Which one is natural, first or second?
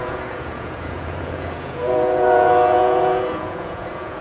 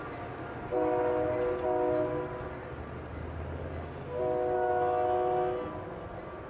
second